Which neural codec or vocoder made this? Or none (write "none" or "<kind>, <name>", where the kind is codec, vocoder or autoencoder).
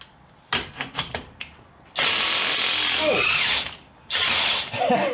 none